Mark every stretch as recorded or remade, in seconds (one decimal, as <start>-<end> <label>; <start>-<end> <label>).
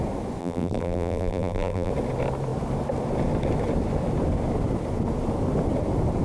0.0-0.4 recorded; 0.4-1.9 remade; 1.9-6.2 recorded